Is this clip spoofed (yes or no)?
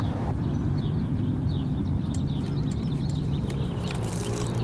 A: yes